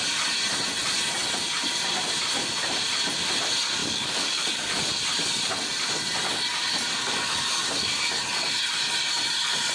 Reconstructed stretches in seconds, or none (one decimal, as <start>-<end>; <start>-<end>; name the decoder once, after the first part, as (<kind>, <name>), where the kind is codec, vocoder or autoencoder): 3.8-4.7 (codec, DAC); 7.0-8.1